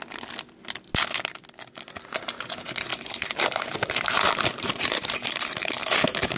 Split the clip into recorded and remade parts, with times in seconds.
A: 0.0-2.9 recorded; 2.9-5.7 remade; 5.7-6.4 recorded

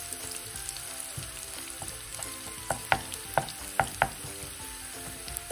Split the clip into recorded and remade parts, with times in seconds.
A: 0.0-2.1 remade; 2.1-5.5 recorded